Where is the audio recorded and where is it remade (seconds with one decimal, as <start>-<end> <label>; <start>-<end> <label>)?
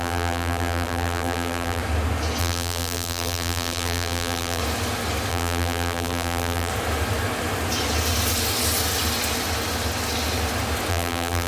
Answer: 0.0-1.8 remade; 1.8-2.4 recorded; 2.4-4.6 remade; 4.6-5.3 recorded; 5.3-6.7 remade; 6.7-10.9 recorded; 10.9-11.5 remade